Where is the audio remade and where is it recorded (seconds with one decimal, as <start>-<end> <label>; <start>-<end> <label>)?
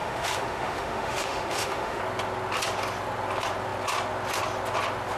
0.0-2.0 remade; 2.0-5.2 recorded